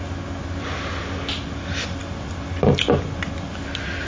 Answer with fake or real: real